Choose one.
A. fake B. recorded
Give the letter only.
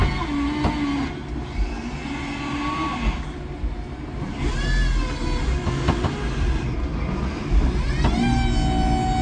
B